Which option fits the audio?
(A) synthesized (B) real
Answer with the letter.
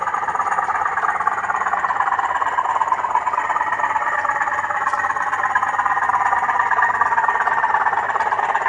B